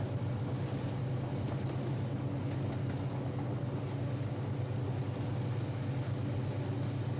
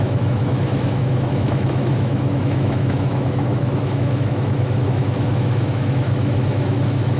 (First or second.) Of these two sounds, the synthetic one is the second